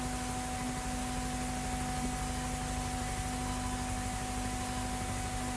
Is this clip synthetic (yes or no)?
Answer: no